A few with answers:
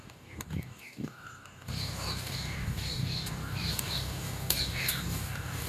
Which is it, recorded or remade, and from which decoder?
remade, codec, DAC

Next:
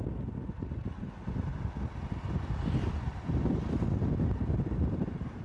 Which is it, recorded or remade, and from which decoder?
recorded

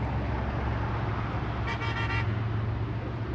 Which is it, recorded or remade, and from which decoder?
recorded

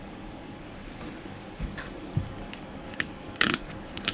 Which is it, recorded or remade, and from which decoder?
remade, codec, DAC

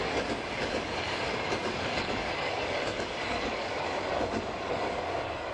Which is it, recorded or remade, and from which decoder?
remade, codec, DAC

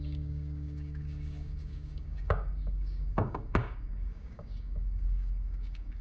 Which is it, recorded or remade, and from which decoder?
remade, codec, DAC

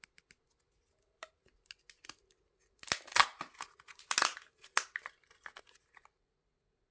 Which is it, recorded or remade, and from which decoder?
recorded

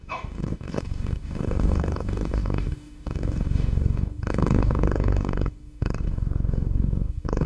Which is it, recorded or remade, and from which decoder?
remade, codec, DAC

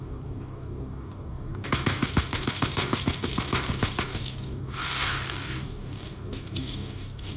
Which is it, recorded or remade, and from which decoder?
remade, codec, DAC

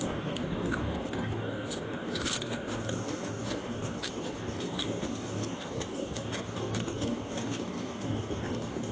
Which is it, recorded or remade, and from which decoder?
remade, codec, DAC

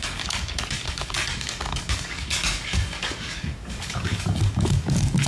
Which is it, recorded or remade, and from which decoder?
remade, codec, DAC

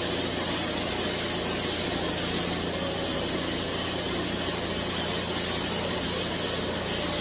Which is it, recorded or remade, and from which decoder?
recorded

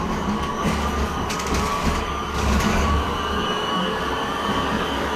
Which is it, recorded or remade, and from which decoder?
remade, codec, DAC